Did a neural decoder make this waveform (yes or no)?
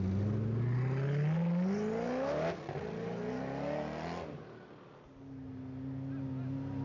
no